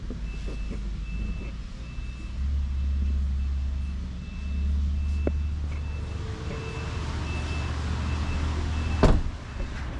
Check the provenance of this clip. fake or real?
real